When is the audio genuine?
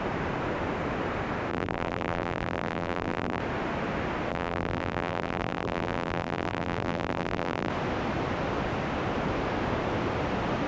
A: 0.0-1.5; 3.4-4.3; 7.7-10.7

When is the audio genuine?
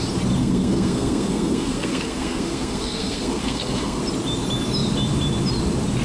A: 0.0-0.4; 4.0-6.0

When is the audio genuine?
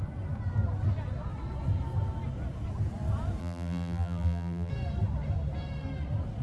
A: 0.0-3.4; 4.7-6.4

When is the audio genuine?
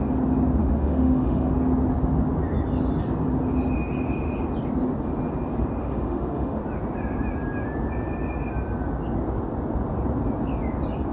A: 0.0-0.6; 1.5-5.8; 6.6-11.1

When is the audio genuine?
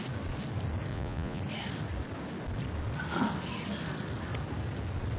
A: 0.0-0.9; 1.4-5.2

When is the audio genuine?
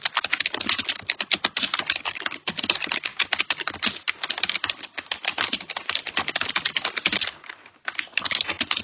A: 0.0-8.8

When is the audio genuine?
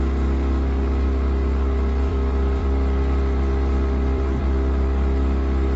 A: 0.0-2.1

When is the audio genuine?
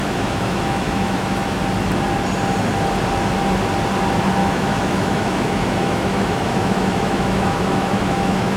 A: 1.6-4.4